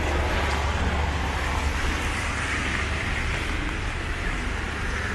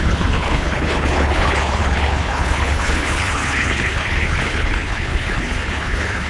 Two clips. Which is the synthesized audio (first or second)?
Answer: second